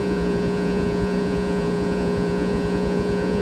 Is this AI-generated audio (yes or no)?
yes